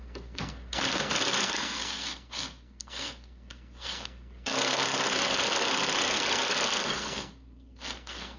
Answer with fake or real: fake